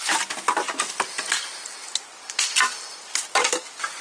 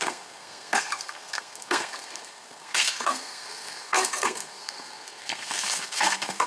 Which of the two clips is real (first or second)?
first